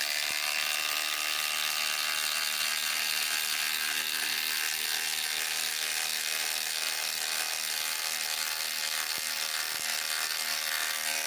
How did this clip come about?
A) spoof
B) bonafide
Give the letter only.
B